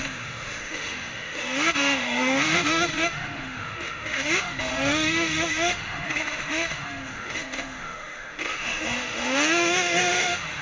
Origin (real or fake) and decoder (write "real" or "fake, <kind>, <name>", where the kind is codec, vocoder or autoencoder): fake, autoencoder, DAC-VAE